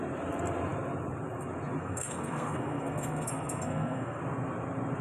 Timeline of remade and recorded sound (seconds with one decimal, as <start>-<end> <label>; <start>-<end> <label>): 0.0-1.8 recorded; 1.8-4.2 remade; 4.2-5.0 recorded